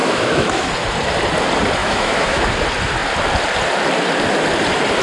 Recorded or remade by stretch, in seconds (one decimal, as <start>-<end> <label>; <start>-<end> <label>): 0.0-0.7 remade; 0.7-1.8 recorded; 1.8-2.4 remade; 2.4-5.0 recorded